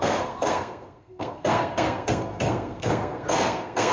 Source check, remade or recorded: remade